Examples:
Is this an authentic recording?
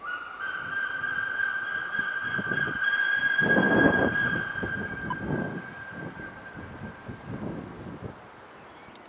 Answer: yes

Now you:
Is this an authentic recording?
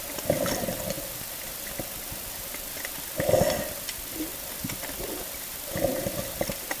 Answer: yes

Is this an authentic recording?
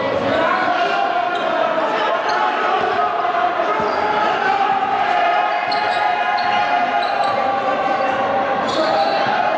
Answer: yes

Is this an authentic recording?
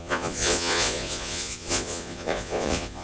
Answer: no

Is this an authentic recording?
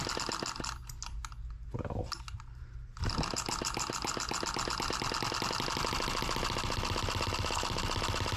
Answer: yes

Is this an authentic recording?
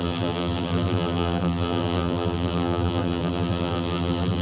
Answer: no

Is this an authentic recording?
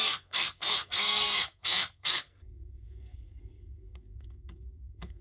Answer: no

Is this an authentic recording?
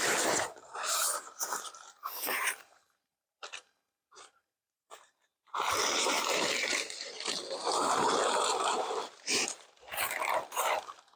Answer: no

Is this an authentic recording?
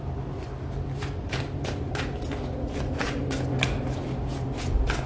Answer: yes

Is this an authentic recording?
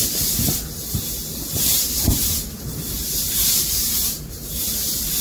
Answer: no